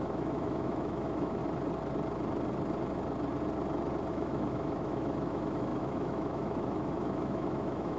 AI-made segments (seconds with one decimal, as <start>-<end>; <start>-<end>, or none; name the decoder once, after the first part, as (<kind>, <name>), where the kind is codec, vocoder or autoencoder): 0.0-1.4 (autoencoder, DAC-VAE); 4.1-8.0